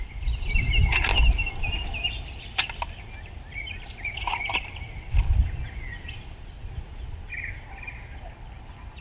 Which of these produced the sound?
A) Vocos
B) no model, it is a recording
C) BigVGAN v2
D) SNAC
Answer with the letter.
B